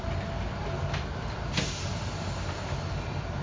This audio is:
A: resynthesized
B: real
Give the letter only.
B